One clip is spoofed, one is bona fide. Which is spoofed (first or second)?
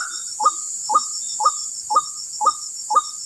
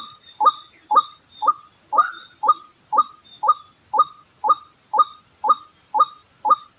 first